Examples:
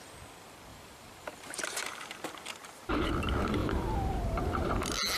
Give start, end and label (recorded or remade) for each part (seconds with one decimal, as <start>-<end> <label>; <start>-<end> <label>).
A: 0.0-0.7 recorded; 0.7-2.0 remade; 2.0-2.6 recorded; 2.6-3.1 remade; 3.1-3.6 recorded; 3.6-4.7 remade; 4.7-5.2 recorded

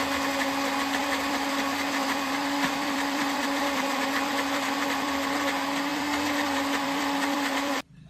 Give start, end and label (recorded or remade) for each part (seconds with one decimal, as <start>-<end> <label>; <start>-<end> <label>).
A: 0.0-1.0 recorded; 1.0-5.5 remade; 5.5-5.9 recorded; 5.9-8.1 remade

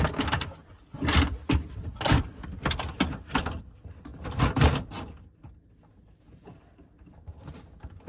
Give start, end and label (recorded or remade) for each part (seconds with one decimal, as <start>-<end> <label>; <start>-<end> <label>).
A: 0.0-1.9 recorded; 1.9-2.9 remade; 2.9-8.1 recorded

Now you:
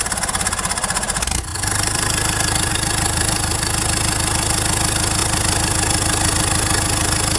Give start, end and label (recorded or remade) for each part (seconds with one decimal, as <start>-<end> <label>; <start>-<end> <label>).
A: 0.0-1.5 recorded; 1.5-2.7 remade; 2.7-7.4 recorded

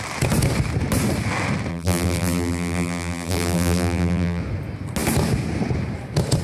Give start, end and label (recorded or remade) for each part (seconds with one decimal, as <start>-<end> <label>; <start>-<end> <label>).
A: 0.0-1.7 recorded; 1.7-4.4 remade; 4.4-6.4 recorded